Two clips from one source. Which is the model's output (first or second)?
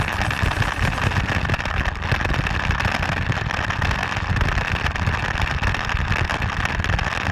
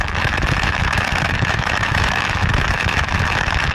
second